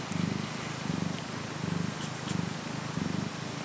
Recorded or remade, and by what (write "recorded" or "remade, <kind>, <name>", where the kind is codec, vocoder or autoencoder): recorded